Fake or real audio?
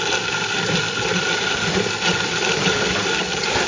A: real